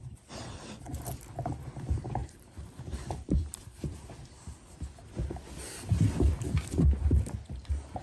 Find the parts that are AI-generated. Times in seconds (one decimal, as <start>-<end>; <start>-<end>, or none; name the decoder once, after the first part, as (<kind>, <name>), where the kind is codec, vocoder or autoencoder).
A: 2.2-4.1 (vocoder, BigVGAN v2)